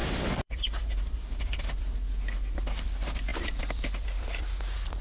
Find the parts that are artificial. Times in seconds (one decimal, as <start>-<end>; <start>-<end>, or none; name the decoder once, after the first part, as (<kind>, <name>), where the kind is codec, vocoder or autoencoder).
0.0-1.6 (vocoder, BigVGAN v2)